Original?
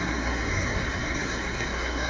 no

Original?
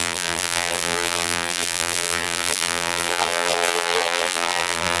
no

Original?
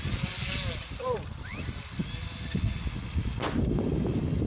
yes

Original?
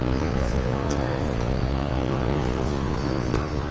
no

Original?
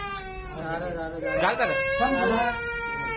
yes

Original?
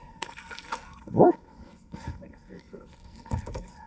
no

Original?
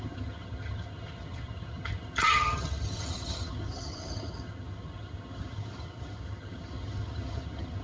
no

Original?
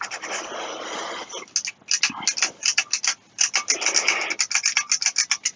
yes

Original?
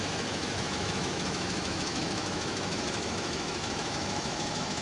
no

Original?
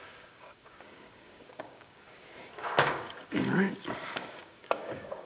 no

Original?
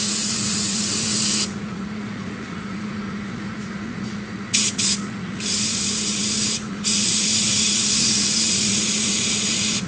no